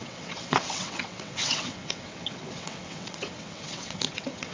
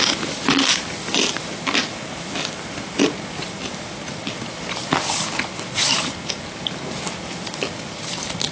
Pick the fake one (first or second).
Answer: first